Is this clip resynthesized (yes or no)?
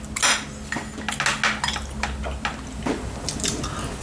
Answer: no